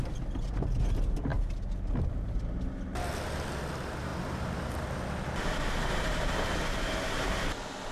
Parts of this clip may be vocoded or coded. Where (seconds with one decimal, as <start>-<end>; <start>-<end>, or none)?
none